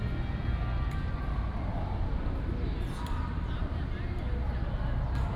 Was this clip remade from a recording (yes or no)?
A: no